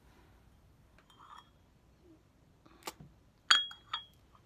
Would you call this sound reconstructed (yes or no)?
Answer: no